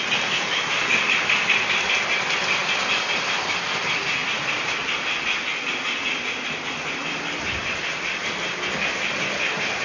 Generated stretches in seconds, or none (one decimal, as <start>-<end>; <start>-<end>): none